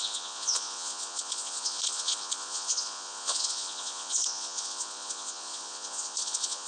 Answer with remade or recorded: remade